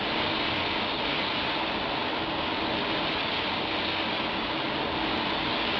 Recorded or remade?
recorded